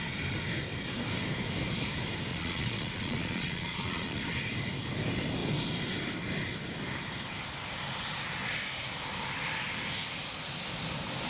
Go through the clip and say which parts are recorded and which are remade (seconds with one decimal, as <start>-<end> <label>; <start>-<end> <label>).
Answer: 0.0-2.3 recorded; 2.3-4.2 remade; 4.2-11.3 recorded